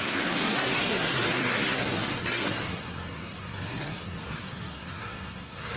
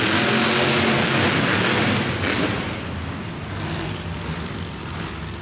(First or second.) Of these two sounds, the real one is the second